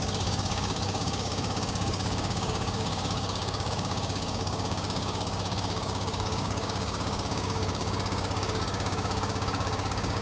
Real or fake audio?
fake